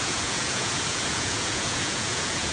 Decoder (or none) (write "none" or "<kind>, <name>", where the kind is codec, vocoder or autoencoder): vocoder, Vocos